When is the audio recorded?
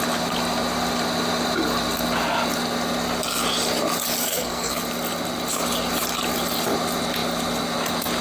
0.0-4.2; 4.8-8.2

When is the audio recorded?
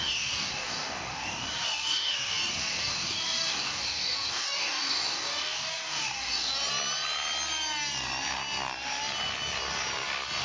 6.5-10.4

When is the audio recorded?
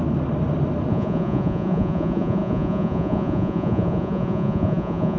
0.0-0.9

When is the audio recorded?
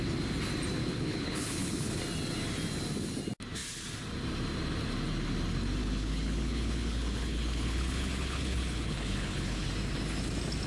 0.0-0.8; 2.0-5.8; 9.7-10.7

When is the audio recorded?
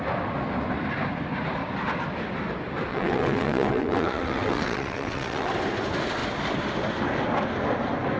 0.0-2.9; 5.5-8.2